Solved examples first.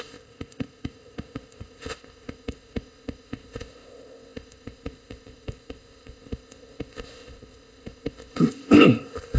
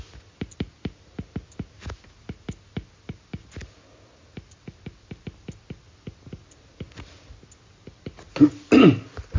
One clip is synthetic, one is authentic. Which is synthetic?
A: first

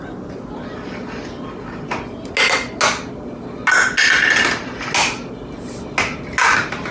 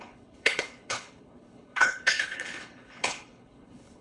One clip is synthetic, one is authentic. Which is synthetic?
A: second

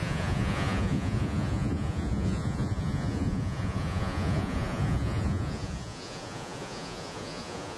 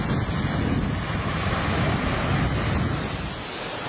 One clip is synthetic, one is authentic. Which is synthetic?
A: first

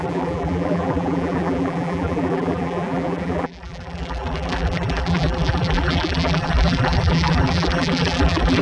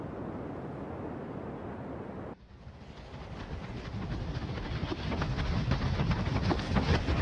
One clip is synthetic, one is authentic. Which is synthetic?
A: first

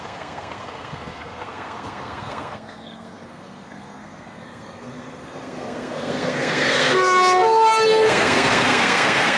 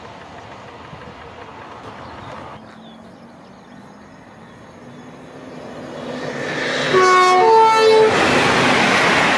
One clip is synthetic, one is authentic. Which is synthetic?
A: first